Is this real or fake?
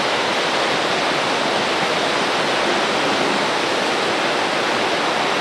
real